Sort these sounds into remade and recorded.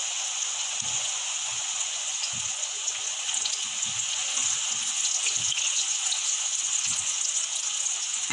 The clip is remade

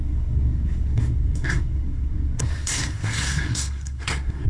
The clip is remade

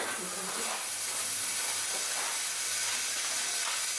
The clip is recorded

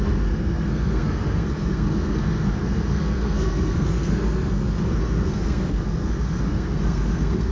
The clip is remade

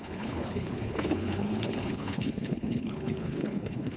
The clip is remade